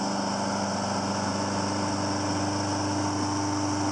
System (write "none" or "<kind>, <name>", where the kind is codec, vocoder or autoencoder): none